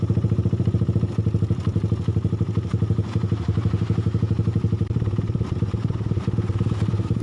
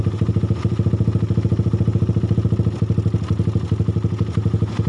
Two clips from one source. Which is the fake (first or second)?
first